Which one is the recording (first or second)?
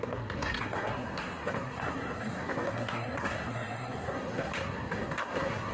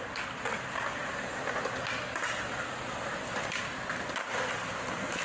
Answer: second